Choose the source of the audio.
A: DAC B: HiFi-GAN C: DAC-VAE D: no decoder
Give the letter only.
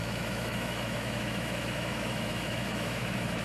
C